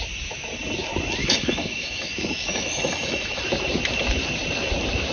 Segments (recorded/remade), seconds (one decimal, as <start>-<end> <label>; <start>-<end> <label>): 0.0-1.2 recorded; 1.2-3.4 remade; 3.4-5.1 recorded